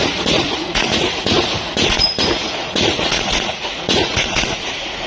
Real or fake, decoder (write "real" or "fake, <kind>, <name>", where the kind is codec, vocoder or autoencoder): fake, vocoder, Vocos